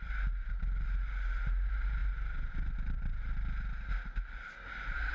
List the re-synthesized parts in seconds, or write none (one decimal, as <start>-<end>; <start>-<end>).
none